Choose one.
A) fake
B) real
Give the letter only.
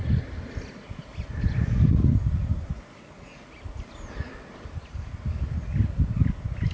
B